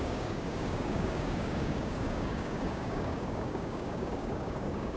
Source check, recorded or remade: remade